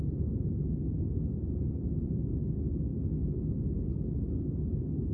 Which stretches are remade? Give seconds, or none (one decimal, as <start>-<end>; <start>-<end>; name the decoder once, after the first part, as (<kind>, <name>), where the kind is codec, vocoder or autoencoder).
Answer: 2.9-3.5 (autoencoder, DAC-VAE)